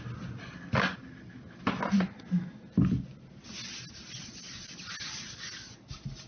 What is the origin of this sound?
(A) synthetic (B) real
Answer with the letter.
B